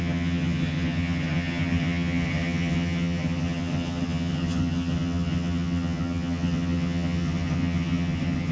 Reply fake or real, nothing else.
fake